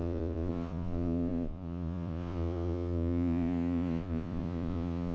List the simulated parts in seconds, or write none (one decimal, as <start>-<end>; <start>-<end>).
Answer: 0.0-5.1